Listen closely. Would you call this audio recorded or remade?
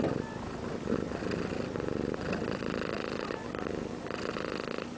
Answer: recorded